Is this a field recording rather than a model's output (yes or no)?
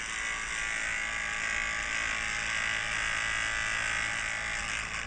yes